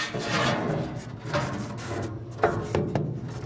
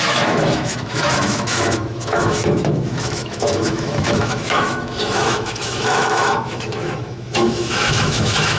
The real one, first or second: first